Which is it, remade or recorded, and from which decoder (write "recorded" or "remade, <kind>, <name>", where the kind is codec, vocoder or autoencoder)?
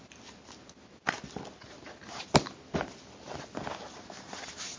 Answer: recorded